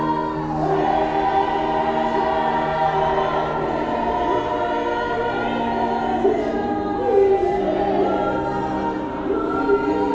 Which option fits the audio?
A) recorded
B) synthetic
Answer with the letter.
A